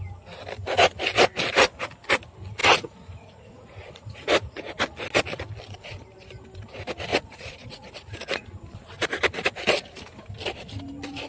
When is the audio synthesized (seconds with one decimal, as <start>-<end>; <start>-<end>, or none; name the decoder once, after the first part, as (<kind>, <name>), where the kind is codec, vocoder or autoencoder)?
2.6-4.7 (vocoder, Vocos); 7.1-8.5